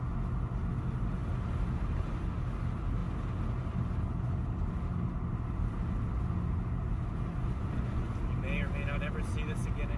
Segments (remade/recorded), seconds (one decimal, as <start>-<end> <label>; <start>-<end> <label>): 0.0-7.4 recorded; 7.4-8.1 remade; 8.1-10.0 recorded